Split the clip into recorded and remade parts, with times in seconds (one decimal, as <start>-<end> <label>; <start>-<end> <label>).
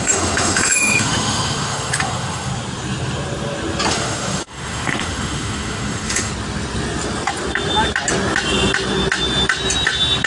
0.0-2.5 remade; 2.5-3.9 recorded; 3.9-6.3 remade; 6.3-10.3 recorded